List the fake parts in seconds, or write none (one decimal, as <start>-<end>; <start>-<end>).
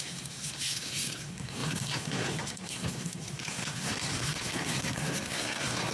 0.0-5.9